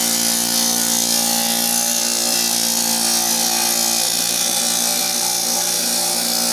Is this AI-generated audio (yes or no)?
no